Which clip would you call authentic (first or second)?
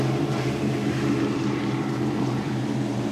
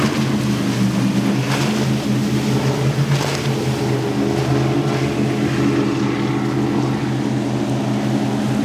second